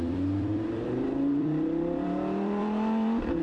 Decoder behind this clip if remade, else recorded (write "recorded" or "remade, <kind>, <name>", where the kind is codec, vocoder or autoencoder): remade, vocoder, BigVGAN v2